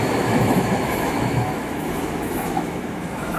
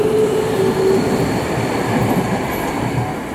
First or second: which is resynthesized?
first